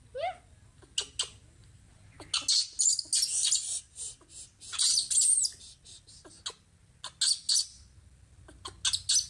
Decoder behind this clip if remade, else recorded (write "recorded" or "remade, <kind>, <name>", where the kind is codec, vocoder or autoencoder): recorded